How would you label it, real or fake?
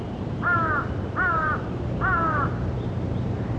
fake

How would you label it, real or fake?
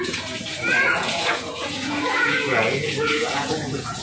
fake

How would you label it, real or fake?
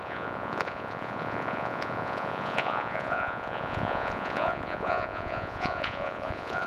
fake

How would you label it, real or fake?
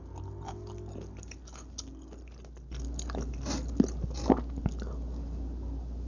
real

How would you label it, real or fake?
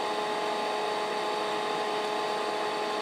real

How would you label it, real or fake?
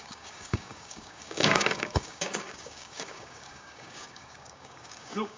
fake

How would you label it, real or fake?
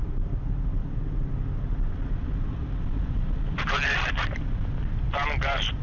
real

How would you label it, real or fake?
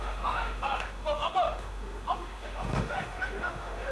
fake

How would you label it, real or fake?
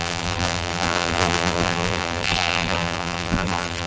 fake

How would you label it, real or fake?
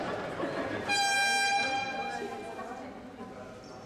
real